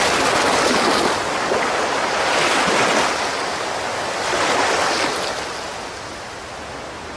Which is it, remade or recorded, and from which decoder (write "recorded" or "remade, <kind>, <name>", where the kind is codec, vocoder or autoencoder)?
recorded